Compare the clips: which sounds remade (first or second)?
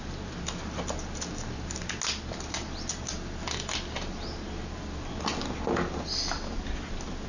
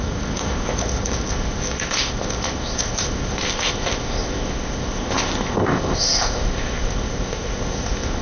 second